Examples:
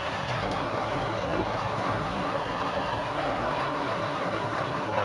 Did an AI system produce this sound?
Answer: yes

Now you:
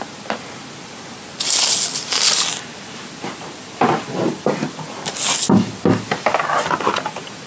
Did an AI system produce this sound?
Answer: no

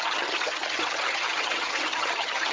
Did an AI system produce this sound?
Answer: yes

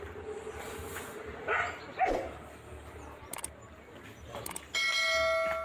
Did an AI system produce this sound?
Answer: no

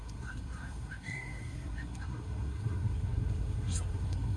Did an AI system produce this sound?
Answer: yes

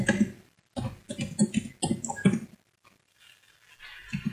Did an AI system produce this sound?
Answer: no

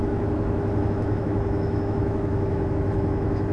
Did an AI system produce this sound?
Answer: yes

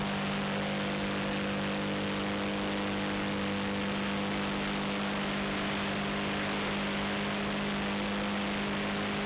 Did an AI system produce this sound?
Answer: no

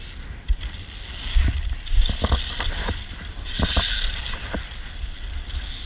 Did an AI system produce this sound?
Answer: no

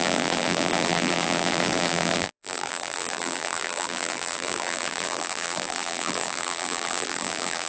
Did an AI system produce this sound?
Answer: yes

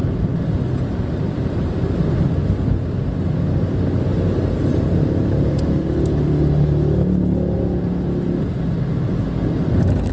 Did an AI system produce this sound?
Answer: no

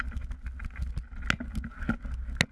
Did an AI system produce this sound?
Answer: no